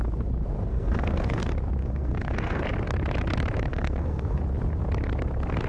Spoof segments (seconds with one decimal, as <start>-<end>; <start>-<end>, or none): 0.7-1.4; 1.8-2.6; 3.7-4.4